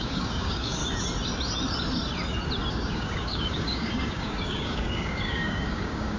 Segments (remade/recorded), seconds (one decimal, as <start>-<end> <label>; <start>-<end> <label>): 0.0-0.8 remade; 0.8-2.7 recorded; 2.7-6.2 remade